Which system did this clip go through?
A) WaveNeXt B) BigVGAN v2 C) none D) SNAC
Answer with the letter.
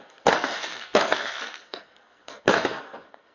D